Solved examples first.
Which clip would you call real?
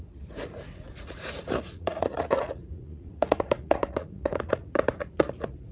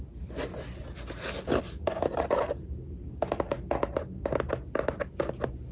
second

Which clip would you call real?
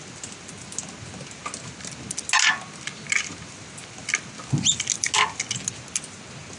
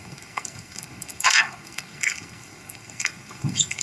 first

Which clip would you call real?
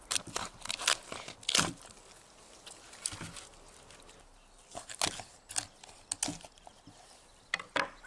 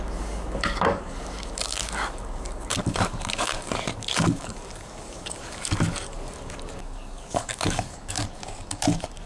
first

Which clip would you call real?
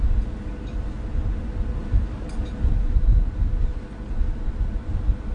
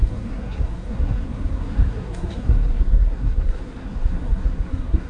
first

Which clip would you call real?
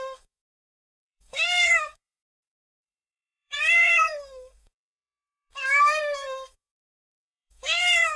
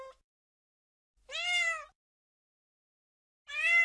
second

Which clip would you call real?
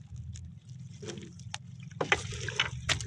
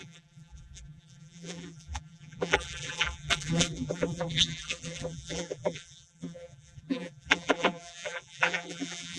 first